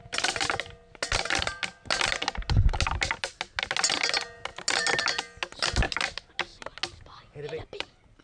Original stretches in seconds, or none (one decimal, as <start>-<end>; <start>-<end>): 0.0-8.2